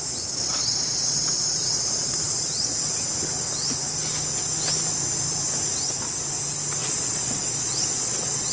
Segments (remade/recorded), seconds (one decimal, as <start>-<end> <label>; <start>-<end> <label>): 0.0-0.5 recorded; 0.5-2.9 remade; 2.9-6.8 recorded; 6.8-8.5 remade